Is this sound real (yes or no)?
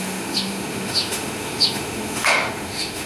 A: no